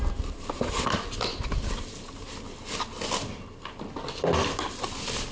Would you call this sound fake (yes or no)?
no